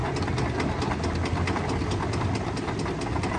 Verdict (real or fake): real